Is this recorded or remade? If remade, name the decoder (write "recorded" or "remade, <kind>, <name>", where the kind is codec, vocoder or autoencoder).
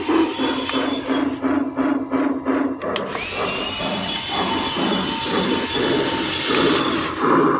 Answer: recorded